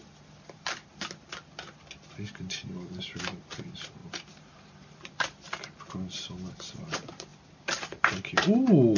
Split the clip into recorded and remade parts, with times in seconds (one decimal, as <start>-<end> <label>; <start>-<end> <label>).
0.0-4.0 recorded; 4.0-5.1 remade; 5.1-9.0 recorded